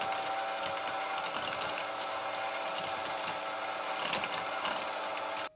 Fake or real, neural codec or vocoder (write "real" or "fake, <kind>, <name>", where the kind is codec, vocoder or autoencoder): real